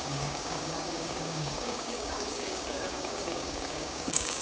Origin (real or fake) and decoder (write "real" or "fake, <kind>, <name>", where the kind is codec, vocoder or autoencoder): fake, codec, DAC